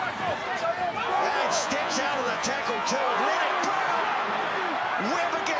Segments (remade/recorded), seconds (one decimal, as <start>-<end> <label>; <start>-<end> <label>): 0.0-1.1 recorded; 1.1-3.2 remade; 3.2-5.6 recorded